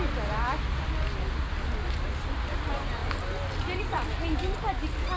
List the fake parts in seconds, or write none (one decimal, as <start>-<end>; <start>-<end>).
none